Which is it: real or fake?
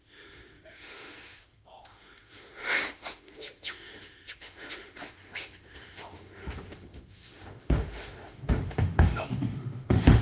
fake